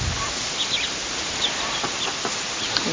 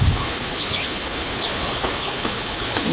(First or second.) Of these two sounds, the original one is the first